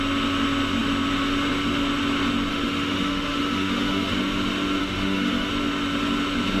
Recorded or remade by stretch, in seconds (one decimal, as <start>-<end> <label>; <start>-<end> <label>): 0.0-2.5 recorded; 2.5-4.1 remade; 4.1-4.8 recorded; 4.8-5.5 remade; 5.5-6.6 recorded